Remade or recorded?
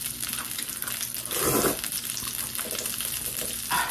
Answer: recorded